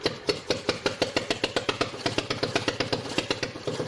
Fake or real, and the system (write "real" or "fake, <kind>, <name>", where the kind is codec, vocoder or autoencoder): real